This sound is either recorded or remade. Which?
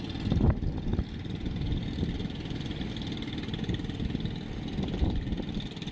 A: recorded